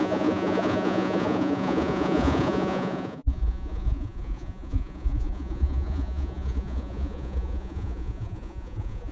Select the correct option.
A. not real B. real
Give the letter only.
A